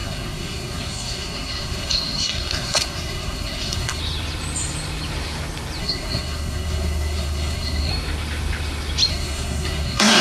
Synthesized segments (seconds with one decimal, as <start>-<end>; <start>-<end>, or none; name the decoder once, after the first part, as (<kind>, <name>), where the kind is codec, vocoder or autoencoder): 0.0-4.0 (codec, SNAC); 5.8-7.9; 9.1-10.2